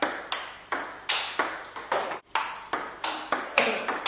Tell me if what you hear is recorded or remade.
recorded